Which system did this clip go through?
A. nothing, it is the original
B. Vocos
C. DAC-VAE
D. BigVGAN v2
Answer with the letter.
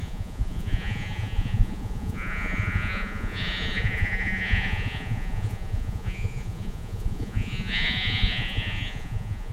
B